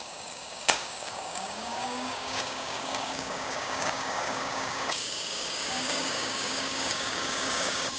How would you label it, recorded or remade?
remade